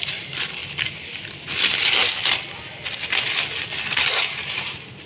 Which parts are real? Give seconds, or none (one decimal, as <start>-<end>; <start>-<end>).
0.6-3.7